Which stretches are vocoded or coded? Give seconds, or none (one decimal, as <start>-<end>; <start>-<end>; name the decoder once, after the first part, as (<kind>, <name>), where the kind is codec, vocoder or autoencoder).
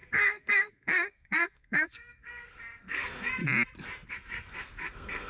0.0-3.4 (codec, SNAC); 4.1-5.3